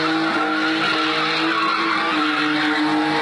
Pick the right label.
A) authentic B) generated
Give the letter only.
A